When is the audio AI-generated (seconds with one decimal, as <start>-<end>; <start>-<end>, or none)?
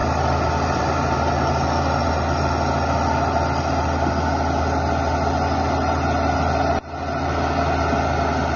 none